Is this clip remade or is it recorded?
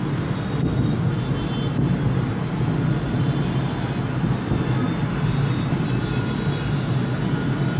recorded